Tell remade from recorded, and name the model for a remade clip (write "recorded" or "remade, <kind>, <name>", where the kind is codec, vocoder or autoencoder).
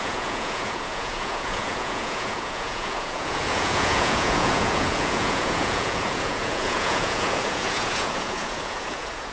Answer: remade, vocoder, Vocos